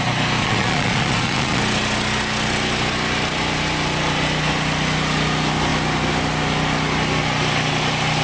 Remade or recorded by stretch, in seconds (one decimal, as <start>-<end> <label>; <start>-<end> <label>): 0.0-0.4 recorded; 0.4-1.6 remade; 1.6-8.2 recorded